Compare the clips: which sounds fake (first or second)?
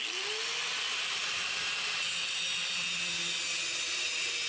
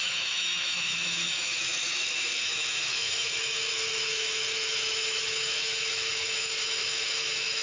second